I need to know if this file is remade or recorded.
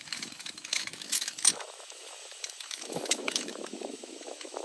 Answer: remade